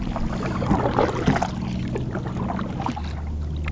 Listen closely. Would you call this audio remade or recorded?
recorded